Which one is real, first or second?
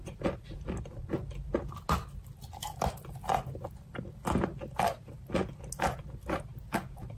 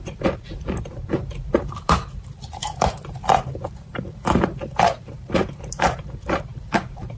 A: first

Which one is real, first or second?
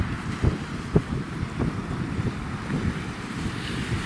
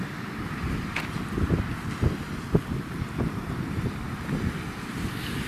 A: second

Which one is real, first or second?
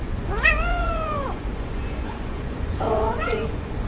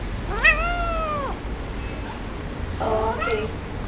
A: second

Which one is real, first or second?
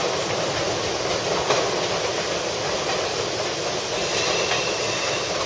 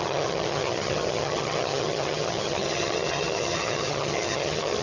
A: first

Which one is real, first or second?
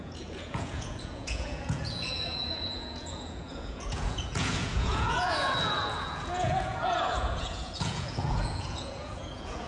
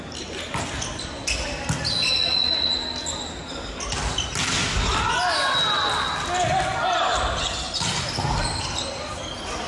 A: second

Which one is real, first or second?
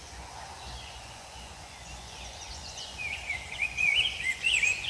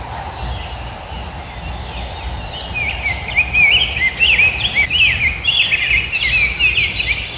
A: second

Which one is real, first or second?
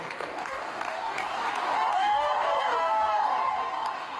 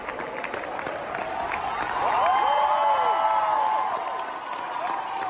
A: second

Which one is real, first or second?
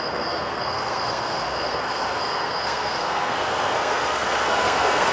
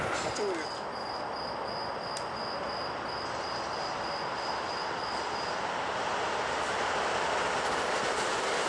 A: second